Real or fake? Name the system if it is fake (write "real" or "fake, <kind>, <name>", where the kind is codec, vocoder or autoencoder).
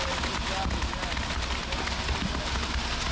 real